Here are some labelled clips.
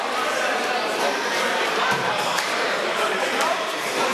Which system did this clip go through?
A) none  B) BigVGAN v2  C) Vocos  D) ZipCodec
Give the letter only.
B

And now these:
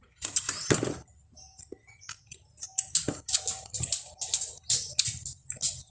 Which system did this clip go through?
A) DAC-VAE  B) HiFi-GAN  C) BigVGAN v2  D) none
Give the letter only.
D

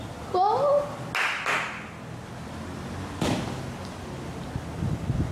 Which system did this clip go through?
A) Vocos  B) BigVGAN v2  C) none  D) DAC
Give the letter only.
C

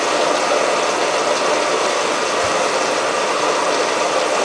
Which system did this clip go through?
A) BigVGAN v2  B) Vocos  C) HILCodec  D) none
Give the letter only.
D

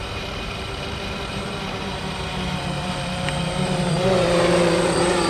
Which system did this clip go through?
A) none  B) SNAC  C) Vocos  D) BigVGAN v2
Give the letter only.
D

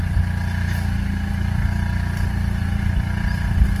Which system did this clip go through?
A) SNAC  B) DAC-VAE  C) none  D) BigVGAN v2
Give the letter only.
C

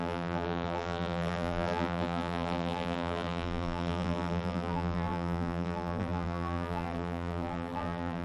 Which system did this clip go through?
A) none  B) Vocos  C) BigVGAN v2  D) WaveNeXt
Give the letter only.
C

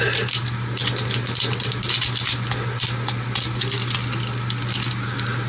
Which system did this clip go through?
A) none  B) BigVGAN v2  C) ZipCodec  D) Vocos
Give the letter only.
A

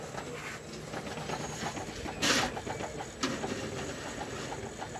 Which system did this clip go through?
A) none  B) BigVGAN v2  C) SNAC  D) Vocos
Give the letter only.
A